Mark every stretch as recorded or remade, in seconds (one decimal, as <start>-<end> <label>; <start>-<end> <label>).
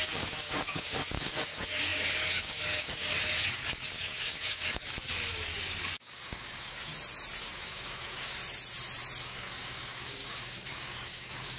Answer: 0.0-6.9 remade; 6.9-7.4 recorded; 7.4-8.4 remade; 8.4-9.2 recorded; 9.2-11.6 remade